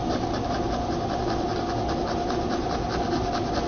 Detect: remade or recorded recorded